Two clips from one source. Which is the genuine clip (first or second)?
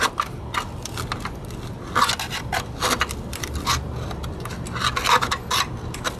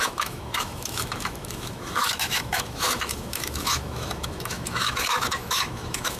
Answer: first